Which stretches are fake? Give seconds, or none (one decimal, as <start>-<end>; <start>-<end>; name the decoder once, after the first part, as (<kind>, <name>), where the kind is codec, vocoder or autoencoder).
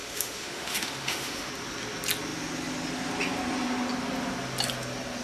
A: 0.0-1.5 (autoencoder, DAC-VAE)